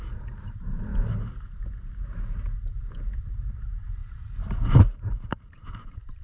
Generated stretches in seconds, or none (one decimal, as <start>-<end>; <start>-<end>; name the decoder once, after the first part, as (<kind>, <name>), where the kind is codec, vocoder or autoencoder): 0.0-0.9 (vocoder, BigVGAN v2); 2.8-6.2